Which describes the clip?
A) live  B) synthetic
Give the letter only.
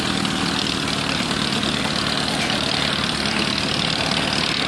A